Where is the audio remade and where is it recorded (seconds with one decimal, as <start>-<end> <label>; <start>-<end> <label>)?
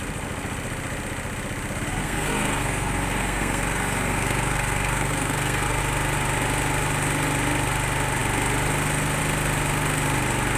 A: 0.0-2.0 recorded; 2.0-5.8 remade; 5.8-10.6 recorded